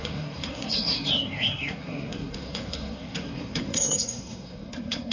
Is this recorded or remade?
remade